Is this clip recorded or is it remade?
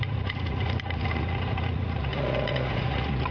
remade